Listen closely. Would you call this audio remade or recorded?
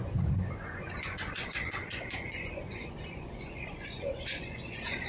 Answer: remade